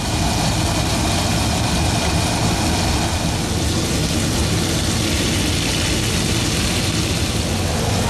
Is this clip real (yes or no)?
yes